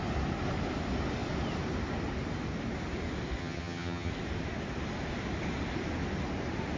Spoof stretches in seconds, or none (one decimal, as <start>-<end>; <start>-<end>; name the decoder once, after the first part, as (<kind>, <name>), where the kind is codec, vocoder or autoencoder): 3.4-4.1 (vocoder, HiFi-GAN)